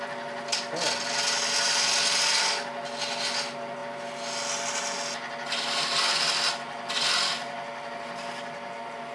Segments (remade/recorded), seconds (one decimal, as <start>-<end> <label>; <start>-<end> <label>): 0.0-9.1 recorded